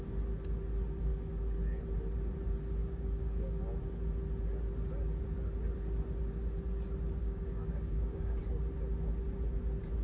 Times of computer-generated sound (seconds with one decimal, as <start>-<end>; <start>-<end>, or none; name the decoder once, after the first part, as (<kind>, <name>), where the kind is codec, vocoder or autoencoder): 2.8-3.6 (codec, DAC); 7.2-8.4